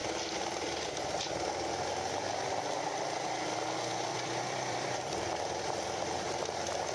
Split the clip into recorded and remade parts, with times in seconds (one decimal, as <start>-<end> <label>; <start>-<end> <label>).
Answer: 0.0-2.8 remade; 2.8-4.1 recorded; 4.1-6.9 remade